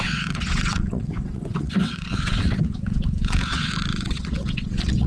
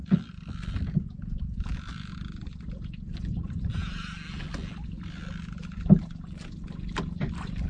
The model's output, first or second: first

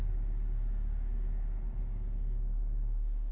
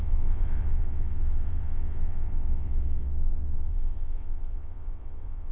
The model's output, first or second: second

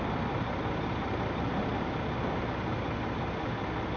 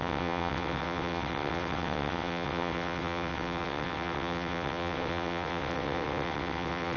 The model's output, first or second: second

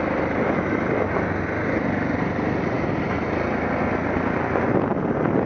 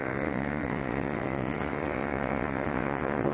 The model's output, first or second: second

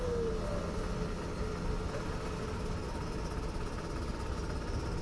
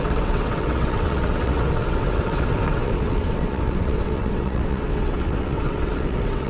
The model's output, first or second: second